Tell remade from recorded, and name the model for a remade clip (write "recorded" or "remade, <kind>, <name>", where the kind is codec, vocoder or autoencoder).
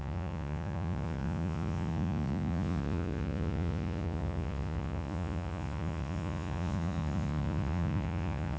remade, vocoder, Vocos